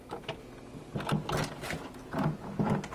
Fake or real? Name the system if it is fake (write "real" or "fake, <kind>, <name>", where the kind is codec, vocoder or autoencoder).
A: real